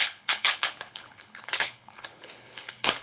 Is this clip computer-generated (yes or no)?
yes